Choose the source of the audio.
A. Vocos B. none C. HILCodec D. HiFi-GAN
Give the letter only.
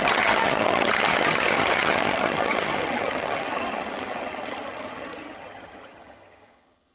D